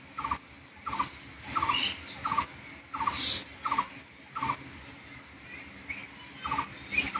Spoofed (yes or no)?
no